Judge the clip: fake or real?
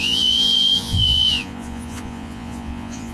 fake